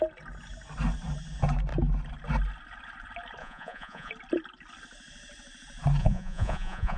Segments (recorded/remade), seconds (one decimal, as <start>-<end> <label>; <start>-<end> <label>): 0.0-3.4 recorded; 3.4-4.1 remade; 4.1-6.0 recorded; 6.0-7.0 remade